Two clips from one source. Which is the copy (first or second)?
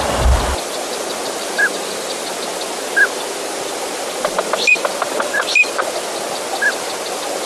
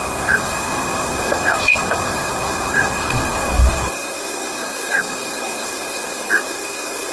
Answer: second